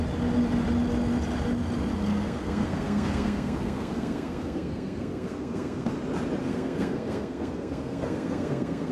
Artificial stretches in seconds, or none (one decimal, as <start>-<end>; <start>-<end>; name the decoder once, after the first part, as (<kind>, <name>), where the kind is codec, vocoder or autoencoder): 2.1-5.9 (codec, SNAC); 6.4-8.9